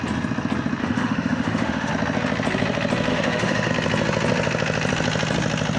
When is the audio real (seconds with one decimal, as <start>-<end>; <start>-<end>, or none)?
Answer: 0.0-0.8; 1.9-3.1; 3.7-5.8